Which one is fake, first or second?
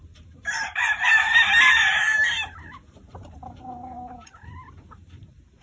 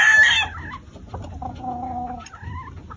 first